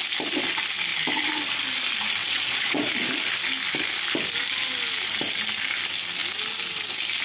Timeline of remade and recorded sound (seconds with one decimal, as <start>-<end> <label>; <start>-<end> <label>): 0.0-2.2 recorded; 2.2-2.9 remade; 2.9-7.2 recorded